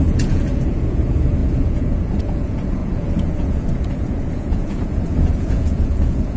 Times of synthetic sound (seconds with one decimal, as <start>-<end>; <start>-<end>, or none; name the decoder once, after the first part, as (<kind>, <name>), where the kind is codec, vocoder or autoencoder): 0.0-6.4 (vocoder, Vocos)